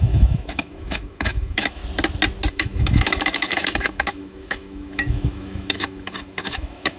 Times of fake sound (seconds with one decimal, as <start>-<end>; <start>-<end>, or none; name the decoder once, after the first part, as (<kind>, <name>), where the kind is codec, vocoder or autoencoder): 0.0-1.8 (autoencoder, DAC-VAE); 2.5-7.0